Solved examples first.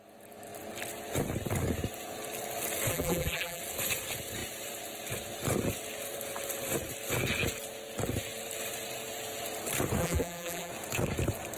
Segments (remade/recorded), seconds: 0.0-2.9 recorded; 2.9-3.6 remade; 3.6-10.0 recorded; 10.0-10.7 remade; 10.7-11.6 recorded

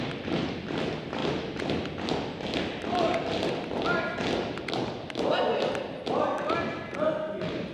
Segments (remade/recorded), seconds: 0.0-1.2 recorded; 1.2-1.7 remade; 1.7-7.7 recorded

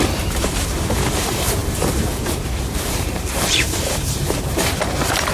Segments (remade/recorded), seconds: 0.0-5.3 remade

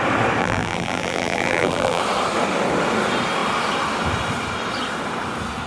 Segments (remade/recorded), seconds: 0.0-0.4 recorded; 0.4-2.0 remade; 2.0-5.7 recorded

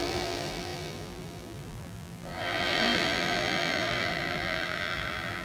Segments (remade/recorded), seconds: 0.0-5.4 remade

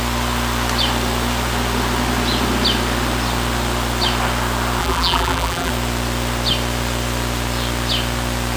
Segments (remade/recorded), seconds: 0.0-4.8 recorded; 4.8-5.7 remade; 5.7-8.6 recorded